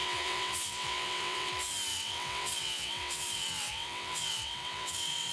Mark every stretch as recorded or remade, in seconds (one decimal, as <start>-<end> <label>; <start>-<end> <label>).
0.0-1.5 remade; 1.5-1.9 recorded; 1.9-5.3 remade